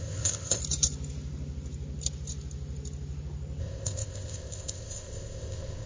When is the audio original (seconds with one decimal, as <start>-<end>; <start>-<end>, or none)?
0.6-3.6

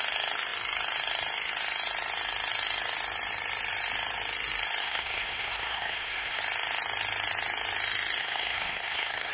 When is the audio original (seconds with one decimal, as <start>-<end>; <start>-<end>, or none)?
0.0-4.8; 6.4-8.2

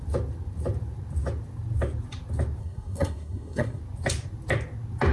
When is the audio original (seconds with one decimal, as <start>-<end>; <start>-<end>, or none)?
0.0-2.6; 3.8-5.1

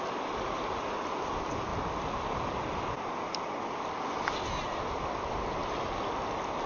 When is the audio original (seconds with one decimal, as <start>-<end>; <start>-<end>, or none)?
0.0-6.7

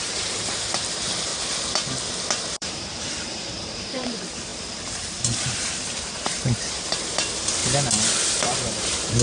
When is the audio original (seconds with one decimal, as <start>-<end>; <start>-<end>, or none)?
1.3-2.5; 7.6-8.4